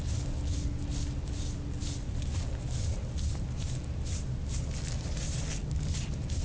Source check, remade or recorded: recorded